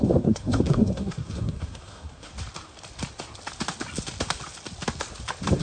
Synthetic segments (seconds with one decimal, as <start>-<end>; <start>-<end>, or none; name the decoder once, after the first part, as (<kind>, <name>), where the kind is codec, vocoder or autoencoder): 0.0-2.3 (codec, SNAC)